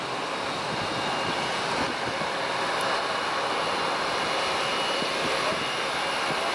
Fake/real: real